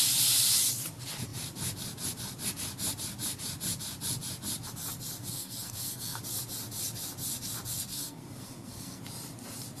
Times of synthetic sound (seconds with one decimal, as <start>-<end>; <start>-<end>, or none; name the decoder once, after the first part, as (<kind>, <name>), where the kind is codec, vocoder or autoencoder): 5.2-6.2 (codec, SNAC); 7.9-9.0